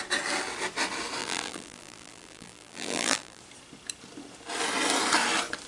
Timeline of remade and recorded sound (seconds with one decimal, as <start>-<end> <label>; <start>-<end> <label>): 0.0-1.2 recorded; 1.2-3.4 remade; 3.4-5.7 recorded